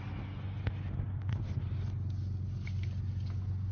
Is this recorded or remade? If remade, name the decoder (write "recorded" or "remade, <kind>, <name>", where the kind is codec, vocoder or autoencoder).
recorded